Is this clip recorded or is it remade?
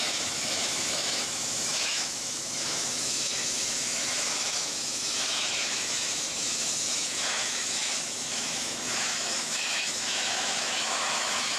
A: remade